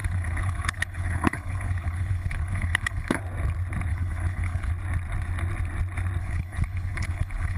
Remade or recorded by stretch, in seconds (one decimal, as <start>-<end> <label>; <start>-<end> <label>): 0.0-3.2 remade; 3.2-3.9 recorded; 3.9-4.7 remade; 4.7-6.2 recorded; 6.2-7.6 remade